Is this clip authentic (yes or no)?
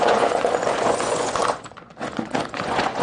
no